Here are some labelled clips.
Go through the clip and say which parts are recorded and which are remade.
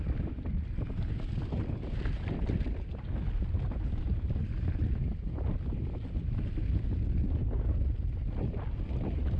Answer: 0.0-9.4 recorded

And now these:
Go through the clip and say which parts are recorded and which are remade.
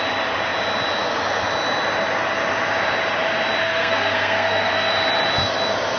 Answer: 0.0-3.6 recorded; 3.6-4.9 remade; 4.9-6.0 recorded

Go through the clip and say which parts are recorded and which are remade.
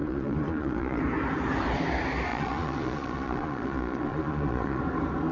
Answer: 0.0-1.0 remade; 1.0-2.3 recorded; 2.3-4.8 remade; 4.8-5.3 recorded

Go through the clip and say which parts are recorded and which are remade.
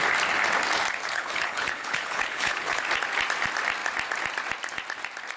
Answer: 0.0-1.0 recorded; 1.0-2.8 remade; 2.8-5.4 recorded